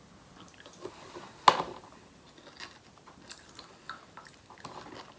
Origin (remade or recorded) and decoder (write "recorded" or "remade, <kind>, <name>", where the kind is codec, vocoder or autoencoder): recorded